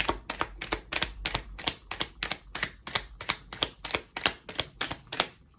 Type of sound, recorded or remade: recorded